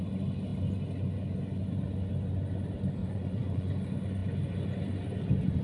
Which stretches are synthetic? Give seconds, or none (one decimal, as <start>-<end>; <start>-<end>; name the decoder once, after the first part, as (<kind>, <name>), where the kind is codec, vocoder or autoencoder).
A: 3.0-3.7 (vocoder, Vocos)